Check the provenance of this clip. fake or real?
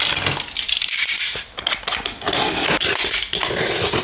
real